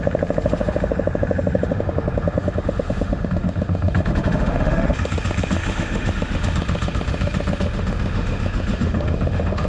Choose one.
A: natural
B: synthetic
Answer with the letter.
B